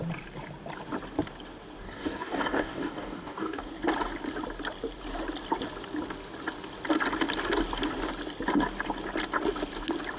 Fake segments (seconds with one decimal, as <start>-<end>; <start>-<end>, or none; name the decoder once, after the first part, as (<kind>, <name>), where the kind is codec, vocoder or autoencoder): 1.8-3.7 (codec, DAC)